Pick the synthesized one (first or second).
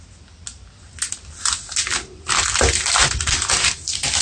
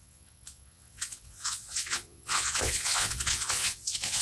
second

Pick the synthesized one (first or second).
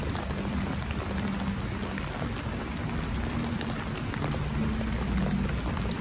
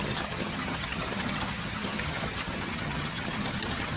second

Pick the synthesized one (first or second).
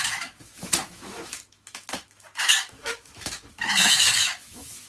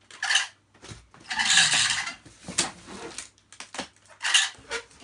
first